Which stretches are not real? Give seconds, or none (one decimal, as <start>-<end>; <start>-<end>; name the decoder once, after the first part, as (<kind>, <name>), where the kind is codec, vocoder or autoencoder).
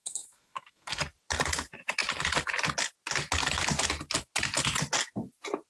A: 0.0-1.0 (codec, SNAC)